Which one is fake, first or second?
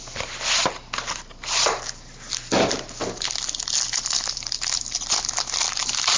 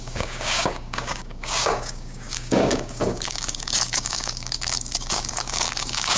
second